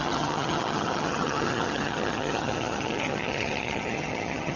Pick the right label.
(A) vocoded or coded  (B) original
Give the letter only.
A